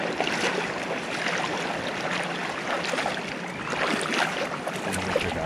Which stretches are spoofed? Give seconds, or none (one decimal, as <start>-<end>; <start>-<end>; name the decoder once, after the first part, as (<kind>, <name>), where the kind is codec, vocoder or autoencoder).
none